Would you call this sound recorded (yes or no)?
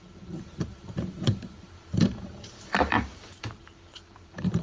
no